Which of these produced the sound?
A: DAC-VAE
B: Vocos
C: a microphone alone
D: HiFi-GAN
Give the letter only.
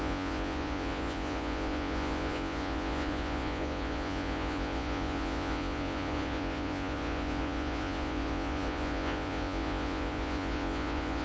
B